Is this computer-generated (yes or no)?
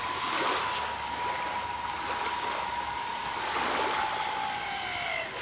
no